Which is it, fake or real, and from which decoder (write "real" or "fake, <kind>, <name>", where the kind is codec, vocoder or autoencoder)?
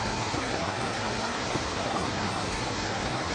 fake, codec, SNAC